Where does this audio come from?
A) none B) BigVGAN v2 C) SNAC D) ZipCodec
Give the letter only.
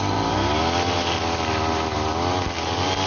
A